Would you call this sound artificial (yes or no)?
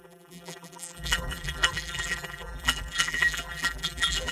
yes